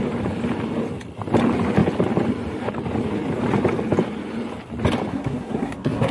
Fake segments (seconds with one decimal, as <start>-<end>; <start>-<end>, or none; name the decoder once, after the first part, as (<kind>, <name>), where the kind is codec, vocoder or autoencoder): 5.1-6.1 (codec, SNAC)